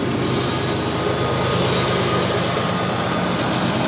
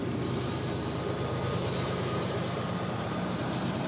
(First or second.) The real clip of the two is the first